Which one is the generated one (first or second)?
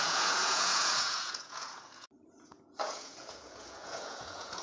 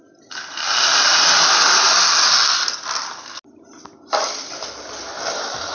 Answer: first